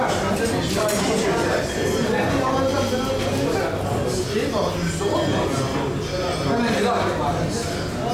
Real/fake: real